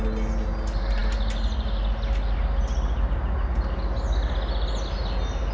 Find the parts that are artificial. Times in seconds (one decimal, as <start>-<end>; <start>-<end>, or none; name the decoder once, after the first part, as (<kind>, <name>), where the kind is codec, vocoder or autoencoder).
none